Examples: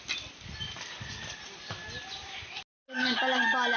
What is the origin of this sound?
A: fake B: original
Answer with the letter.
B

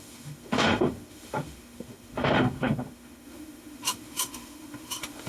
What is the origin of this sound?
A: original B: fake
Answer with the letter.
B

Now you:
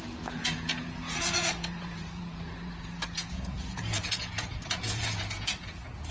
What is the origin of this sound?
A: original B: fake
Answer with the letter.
B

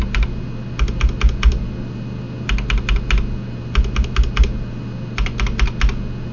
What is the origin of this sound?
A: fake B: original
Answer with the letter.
B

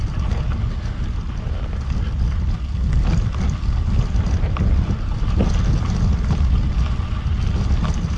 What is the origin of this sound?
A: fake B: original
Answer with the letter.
B